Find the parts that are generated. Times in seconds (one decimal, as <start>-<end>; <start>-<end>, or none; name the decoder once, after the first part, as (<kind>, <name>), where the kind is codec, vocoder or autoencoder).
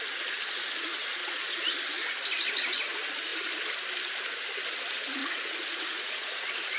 1.2-1.7 (vocoder, Vocos); 5.2-6.8